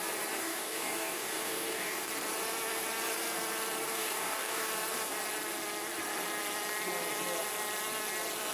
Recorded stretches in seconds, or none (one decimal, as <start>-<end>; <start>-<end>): 0.0-0.4; 2.1-3.9; 4.7-8.5